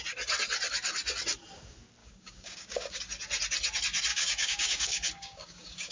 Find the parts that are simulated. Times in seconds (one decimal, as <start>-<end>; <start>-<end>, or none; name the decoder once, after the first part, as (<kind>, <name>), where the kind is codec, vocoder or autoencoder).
2.0-3.0 (codec, DAC); 4.1-5.9